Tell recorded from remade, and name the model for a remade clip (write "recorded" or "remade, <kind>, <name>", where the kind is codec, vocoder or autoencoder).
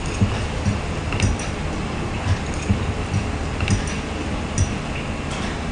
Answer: recorded